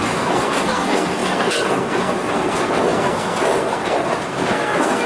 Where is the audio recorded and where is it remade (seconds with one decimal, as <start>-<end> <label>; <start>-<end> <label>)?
0.0-5.1 remade